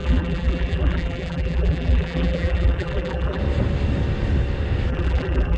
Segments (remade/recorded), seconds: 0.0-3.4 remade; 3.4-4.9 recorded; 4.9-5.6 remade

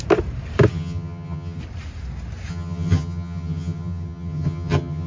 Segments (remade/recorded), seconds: 0.0-0.7 recorded; 0.7-1.6 remade; 1.6-2.5 recorded; 2.5-5.1 remade

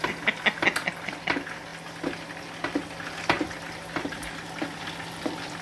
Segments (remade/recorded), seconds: 0.0-5.6 recorded

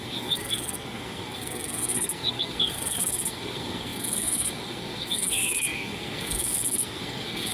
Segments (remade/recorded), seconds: 0.0-7.5 remade

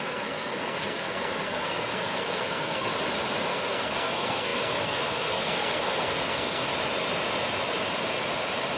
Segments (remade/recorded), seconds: 0.0-2.9 remade; 2.9-3.5 recorded; 3.5-6.7 remade; 6.7-8.8 recorded